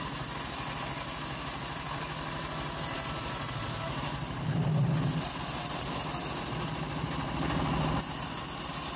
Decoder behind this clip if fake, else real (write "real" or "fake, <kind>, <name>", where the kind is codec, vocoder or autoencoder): real